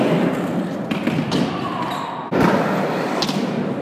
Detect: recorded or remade recorded